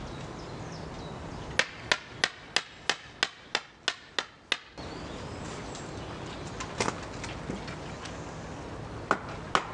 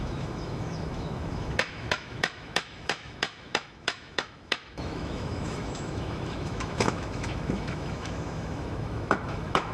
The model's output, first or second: second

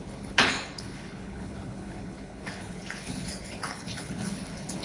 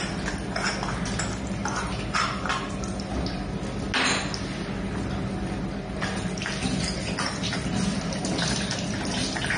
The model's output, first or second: first